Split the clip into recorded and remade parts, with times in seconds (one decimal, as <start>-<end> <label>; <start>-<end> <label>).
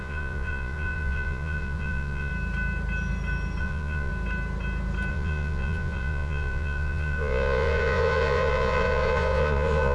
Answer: 0.0-2.3 remade; 2.3-3.6 recorded; 3.6-4.1 remade; 4.1-5.1 recorded; 5.1-9.9 remade